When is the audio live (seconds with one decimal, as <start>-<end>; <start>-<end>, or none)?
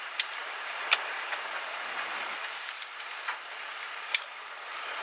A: 0.0-5.0